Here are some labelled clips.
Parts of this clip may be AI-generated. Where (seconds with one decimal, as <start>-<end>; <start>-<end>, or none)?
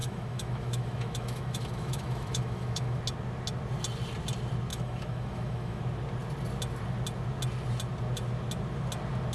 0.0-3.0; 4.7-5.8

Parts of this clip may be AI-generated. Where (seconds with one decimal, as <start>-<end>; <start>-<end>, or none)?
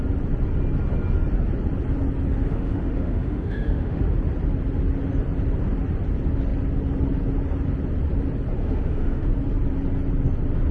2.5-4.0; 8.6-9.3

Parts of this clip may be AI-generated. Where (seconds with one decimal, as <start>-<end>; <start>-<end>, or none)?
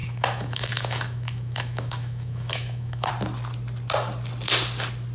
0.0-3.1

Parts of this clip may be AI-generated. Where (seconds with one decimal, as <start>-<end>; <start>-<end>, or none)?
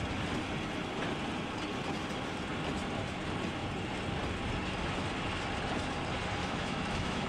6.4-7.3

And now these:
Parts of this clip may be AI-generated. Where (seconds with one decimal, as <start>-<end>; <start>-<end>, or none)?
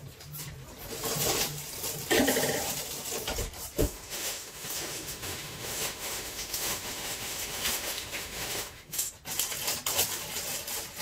3.8-9.1